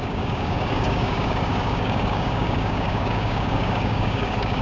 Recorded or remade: remade